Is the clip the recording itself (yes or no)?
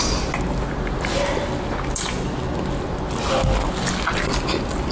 yes